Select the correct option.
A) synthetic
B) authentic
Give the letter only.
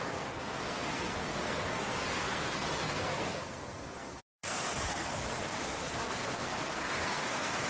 A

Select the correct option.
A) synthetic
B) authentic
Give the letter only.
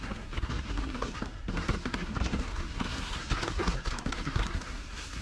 A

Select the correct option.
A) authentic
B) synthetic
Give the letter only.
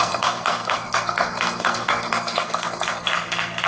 B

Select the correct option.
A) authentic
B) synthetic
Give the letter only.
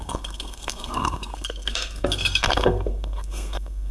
B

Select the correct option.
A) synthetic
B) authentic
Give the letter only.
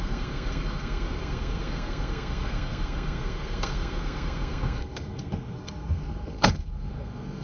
A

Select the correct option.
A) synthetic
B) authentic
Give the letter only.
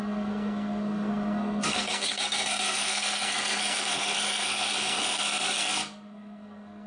A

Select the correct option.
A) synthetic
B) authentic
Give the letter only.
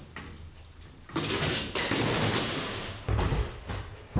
B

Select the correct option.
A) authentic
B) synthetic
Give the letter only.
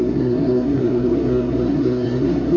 B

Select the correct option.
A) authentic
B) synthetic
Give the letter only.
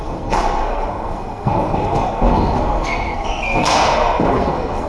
B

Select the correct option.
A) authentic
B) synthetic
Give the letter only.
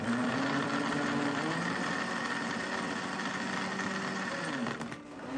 A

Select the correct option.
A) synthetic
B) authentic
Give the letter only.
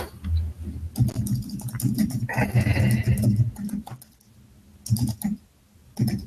B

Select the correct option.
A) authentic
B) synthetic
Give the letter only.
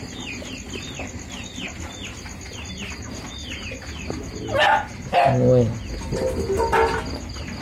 A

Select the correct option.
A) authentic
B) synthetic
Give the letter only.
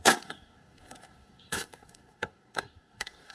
B